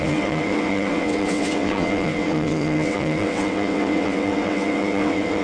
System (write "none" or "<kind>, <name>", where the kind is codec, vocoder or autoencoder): vocoder, WaveNeXt